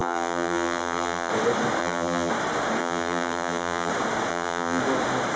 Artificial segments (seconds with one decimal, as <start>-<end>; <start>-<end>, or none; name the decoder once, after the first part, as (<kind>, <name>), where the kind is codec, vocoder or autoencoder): 0.0-1.3 (vocoder, BigVGAN v2); 1.8-2.3; 2.8-3.9; 4.3-4.8